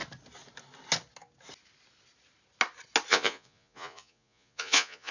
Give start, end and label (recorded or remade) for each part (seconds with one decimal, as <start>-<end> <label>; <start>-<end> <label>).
0.0-3.1 recorded; 3.1-5.1 remade